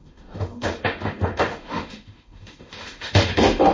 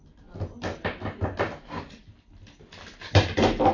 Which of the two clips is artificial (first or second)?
first